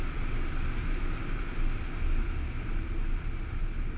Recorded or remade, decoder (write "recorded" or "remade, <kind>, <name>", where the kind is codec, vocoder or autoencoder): recorded